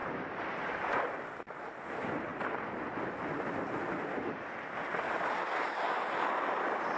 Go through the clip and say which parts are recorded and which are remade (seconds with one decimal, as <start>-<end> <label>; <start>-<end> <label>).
0.0-7.0 recorded

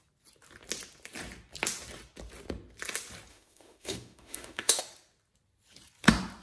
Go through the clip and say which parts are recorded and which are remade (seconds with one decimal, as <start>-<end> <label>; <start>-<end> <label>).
0.0-3.3 recorded; 3.3-4.8 remade; 4.8-6.4 recorded

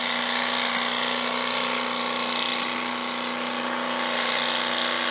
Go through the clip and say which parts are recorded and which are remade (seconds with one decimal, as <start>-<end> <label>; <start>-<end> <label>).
0.0-5.1 recorded

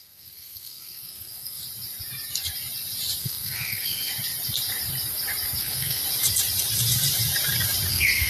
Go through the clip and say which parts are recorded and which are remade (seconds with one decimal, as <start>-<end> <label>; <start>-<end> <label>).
0.0-1.6 remade; 1.6-3.2 recorded; 3.2-4.1 remade; 4.1-5.6 recorded; 5.6-6.0 remade; 6.0-7.9 recorded; 7.9-8.3 remade

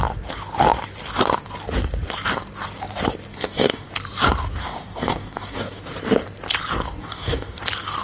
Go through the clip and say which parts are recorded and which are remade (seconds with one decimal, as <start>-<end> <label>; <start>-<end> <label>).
0.0-3.3 recorded; 3.3-3.9 remade; 3.9-4.6 recorded; 4.6-5.8 remade; 5.8-7.0 recorded; 7.0-7.6 remade; 7.6-8.0 recorded